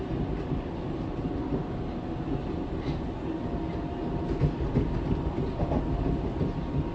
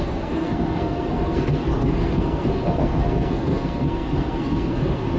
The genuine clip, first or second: first